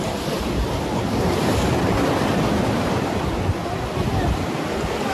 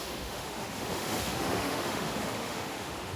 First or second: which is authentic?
first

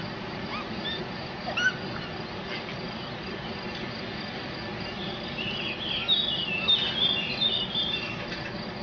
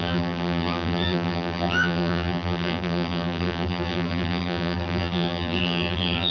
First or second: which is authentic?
first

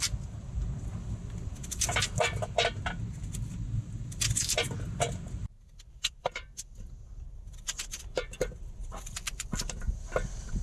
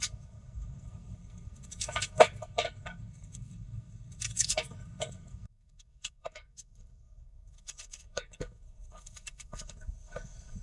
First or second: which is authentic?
first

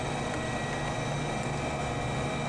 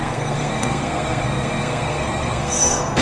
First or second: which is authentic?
first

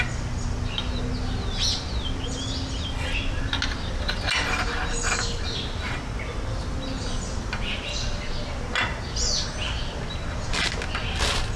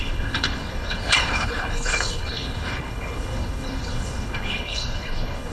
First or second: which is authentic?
first